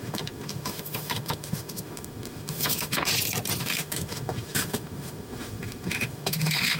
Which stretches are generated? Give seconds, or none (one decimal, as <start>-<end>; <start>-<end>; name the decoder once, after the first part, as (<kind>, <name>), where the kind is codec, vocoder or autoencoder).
0.0-3.1 (autoencoder, DAC-VAE); 3.6-6.8